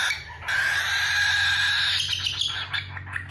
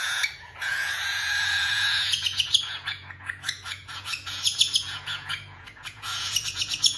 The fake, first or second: second